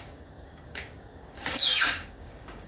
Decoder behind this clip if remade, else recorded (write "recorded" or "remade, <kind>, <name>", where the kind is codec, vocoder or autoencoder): remade, codec, DAC